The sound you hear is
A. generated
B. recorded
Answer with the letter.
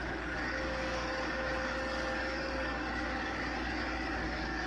A